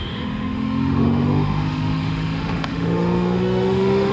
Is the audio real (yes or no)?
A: no